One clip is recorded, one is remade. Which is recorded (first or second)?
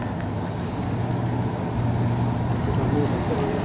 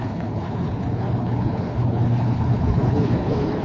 first